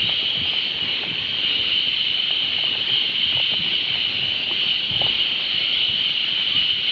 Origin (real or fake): real